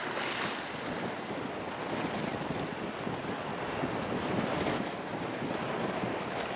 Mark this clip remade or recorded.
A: recorded